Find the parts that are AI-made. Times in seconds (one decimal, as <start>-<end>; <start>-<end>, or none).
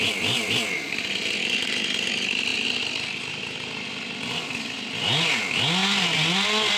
none